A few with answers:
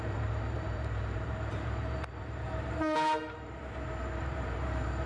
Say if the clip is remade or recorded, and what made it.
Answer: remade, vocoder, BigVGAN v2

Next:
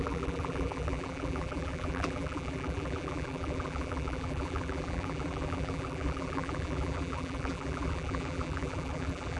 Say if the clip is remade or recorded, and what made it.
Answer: remade, vocoder, BigVGAN v2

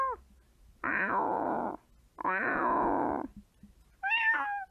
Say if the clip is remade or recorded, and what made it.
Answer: recorded